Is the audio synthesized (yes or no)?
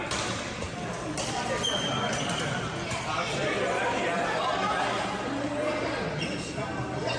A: yes